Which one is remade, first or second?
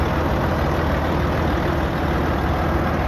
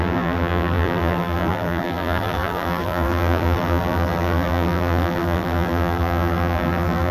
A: second